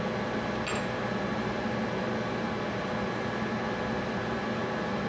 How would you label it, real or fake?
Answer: real